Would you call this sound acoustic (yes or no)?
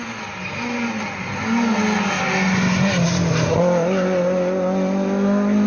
yes